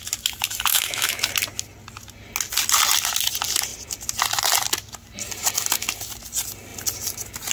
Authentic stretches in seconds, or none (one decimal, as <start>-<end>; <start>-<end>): 0.0-0.7; 1.3-7.5